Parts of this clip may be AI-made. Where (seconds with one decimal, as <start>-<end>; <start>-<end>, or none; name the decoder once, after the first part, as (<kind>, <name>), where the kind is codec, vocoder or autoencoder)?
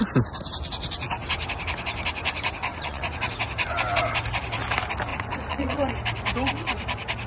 2.7-3.3 (vocoder, Vocos); 5.1-5.9